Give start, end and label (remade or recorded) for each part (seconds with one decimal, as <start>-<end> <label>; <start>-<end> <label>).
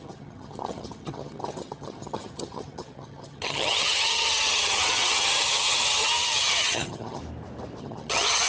0.0-7.2 remade; 7.2-7.8 recorded; 7.8-8.5 remade